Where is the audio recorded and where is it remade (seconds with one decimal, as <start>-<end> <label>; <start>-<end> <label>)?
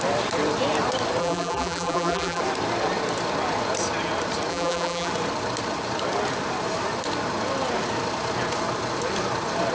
0.0-1.2 recorded; 1.2-2.4 remade; 2.4-4.5 recorded; 4.5-5.1 remade; 5.1-9.7 recorded